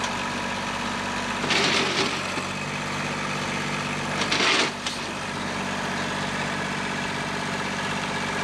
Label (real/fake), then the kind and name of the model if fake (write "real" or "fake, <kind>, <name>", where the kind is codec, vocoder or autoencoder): real